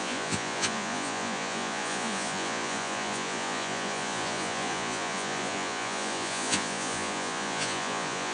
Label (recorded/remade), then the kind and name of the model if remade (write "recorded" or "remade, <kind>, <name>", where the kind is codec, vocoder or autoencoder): remade, vocoder, Vocos